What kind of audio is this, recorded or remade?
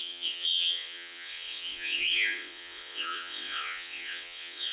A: remade